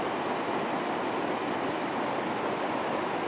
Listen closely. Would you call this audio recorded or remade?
recorded